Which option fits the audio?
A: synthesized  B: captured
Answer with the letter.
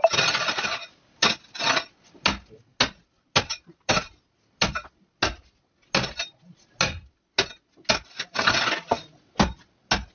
B